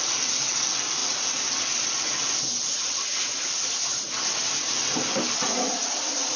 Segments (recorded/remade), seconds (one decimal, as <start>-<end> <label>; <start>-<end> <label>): 0.0-6.4 recorded